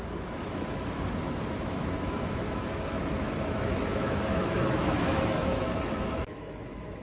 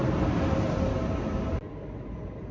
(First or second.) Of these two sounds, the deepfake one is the first